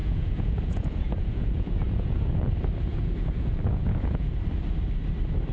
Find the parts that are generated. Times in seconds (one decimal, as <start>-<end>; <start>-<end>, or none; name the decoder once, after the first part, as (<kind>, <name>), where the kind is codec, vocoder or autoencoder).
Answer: 0.0-2.5 (vocoder, Vocos); 2.9-4.3